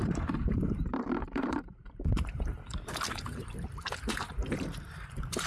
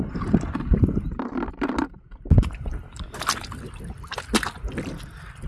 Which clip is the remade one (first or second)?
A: first